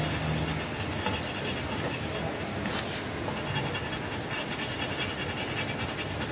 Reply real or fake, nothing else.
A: real